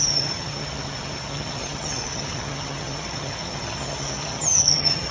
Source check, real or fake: fake